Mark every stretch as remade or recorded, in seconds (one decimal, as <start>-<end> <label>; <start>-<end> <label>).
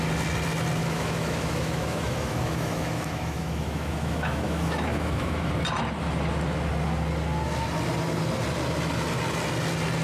0.0-0.8 recorded; 0.8-5.5 remade; 5.5-10.0 recorded